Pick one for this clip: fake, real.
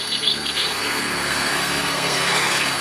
fake